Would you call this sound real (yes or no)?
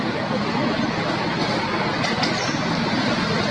yes